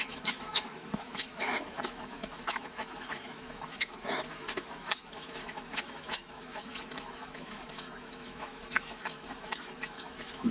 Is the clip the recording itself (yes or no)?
no